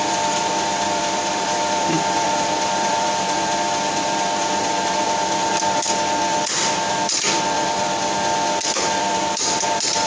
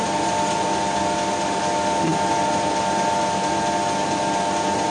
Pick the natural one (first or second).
second